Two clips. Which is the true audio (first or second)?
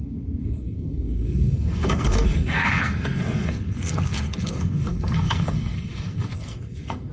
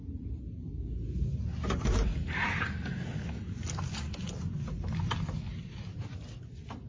second